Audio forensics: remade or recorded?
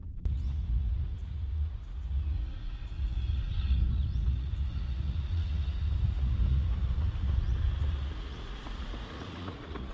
remade